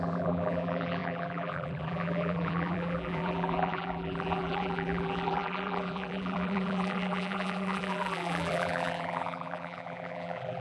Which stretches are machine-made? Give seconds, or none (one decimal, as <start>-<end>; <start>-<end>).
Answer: 0.0-10.6

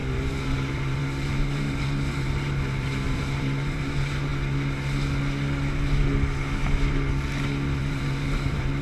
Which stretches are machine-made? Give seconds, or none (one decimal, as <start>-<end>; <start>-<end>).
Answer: 0.0-4.3; 7.8-8.8